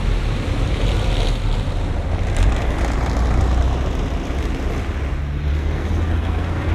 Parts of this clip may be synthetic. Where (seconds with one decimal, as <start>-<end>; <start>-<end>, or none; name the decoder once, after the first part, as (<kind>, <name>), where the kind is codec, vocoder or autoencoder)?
5.5-6.7 (codec, SNAC)

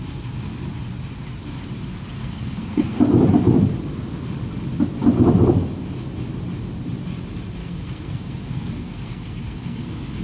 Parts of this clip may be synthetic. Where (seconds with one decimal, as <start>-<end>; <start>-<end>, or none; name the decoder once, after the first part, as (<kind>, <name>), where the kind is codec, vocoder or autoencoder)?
2.2-3.0 (codec, SNAC); 7.6-10.2

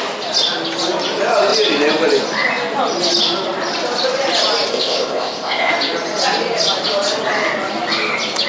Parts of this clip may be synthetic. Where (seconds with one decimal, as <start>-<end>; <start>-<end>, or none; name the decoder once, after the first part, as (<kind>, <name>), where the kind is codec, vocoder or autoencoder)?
4.7-5.7 (codec, ZipCodec)

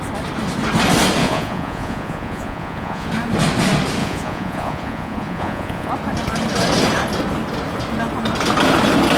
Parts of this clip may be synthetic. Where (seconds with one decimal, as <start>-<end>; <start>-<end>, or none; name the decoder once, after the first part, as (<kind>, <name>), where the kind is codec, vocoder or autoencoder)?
1.2-3.1 (vocoder, Vocos); 4.0-5.9

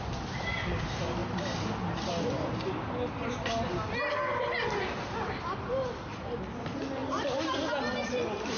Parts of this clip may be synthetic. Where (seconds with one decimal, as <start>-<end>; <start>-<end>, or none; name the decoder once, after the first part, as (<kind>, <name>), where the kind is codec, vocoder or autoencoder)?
none

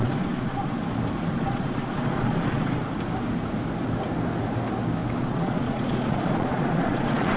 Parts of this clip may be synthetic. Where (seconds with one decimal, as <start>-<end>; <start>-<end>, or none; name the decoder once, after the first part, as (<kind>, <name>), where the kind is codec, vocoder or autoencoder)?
0.0-0.8 (vocoder, Vocos); 1.3-2.8; 5.2-7.4